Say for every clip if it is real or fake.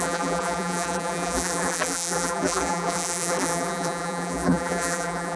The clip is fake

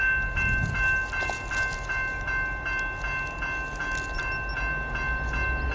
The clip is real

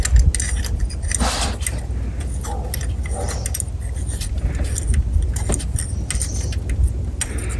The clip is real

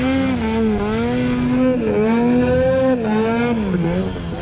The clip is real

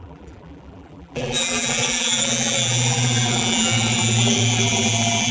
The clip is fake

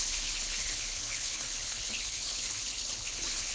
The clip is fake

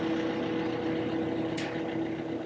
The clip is real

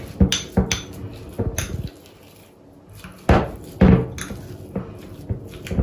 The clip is real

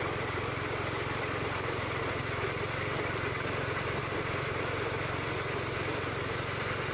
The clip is real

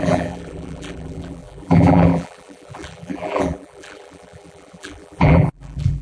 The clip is fake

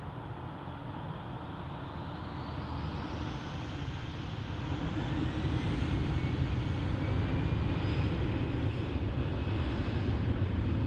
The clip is real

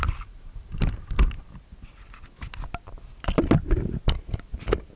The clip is real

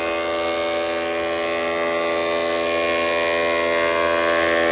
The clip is real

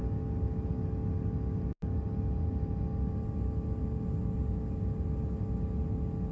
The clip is real